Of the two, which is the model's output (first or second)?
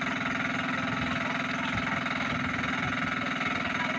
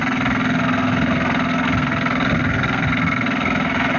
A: second